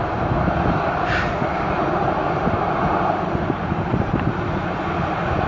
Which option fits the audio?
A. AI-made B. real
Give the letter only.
A